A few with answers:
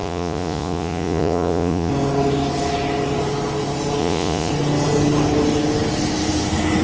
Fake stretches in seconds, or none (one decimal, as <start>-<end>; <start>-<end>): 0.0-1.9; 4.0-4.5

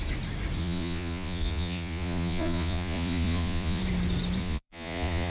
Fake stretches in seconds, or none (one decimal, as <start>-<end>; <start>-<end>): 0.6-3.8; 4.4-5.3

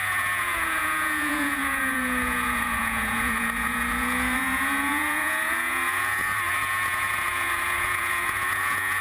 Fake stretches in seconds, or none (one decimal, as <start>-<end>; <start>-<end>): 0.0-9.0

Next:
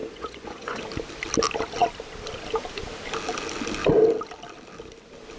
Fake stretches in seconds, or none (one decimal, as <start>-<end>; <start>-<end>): 0.0-0.8

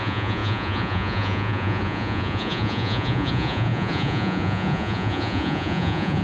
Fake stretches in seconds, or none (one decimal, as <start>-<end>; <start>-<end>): 0.0-6.2

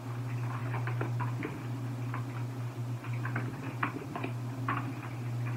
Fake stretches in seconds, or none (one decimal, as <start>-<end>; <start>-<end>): none

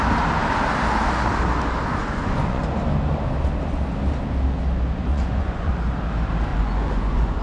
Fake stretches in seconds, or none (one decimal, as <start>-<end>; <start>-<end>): 2.0-2.6; 5.1-5.7; 6.5-7.4

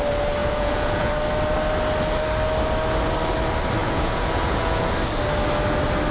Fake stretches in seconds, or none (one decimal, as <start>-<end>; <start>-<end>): 0.4-1.1; 3.8-4.9